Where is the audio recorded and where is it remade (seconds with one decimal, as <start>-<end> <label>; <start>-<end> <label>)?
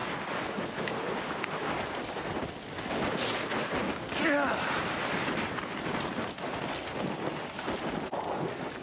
0.0-8.8 recorded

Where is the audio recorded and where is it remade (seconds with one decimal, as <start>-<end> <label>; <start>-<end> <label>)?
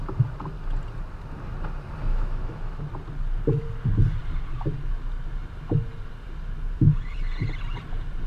0.0-2.1 recorded; 2.1-2.8 remade; 2.8-8.3 recorded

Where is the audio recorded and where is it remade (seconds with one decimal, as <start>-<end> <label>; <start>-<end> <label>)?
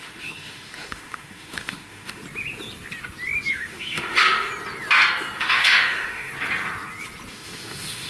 0.0-2.2 remade; 2.2-3.5 recorded; 3.5-4.5 remade; 4.5-5.4 recorded; 5.4-6.3 remade; 6.3-7.3 recorded; 7.3-8.1 remade